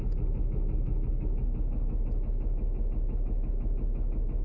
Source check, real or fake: real